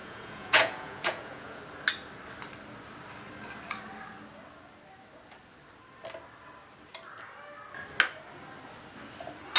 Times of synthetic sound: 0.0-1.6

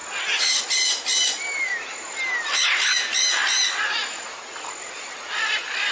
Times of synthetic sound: 0.6-1.7; 4.8-5.9

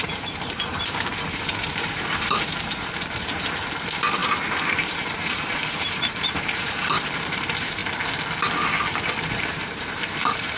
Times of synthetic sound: 0.0-7.8; 9.2-10.6

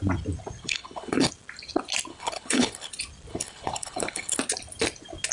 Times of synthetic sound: 0.6-1.3; 2.1-2.9; 3.3-4.4

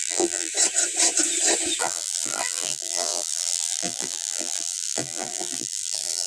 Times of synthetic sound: 0.0-0.5; 1.8-6.3

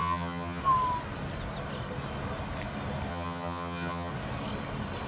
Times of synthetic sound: 0.0-0.6; 3.1-4.1